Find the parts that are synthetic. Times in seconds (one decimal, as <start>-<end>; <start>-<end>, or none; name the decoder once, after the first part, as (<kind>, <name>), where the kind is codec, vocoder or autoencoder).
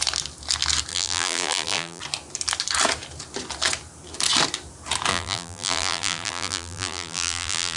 0.9-2.0 (vocoder, BigVGAN v2); 5.1-7.8